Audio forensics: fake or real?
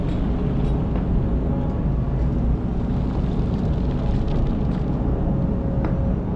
real